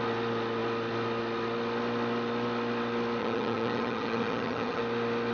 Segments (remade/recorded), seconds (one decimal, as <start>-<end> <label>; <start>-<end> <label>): 0.0-3.2 recorded; 3.2-4.8 remade; 4.8-5.3 recorded